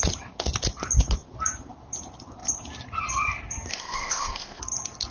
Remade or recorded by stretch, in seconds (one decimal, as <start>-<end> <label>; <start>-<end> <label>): 0.0-3.7 recorded; 3.7-4.6 remade; 4.6-5.1 recorded